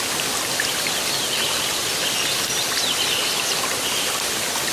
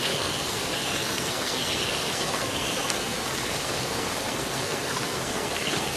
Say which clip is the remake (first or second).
second